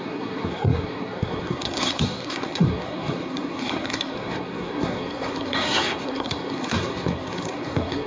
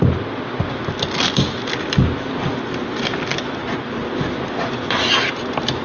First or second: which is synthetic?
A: first